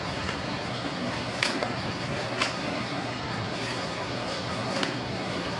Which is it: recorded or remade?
remade